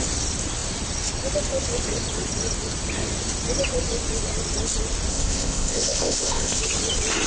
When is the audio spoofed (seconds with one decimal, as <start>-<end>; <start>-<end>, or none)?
5.1-6.6